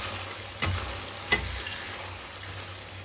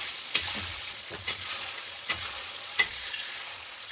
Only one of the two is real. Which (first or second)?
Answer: first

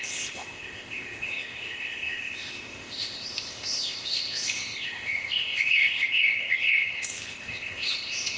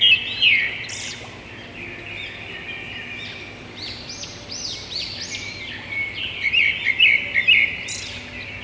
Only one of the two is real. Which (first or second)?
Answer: second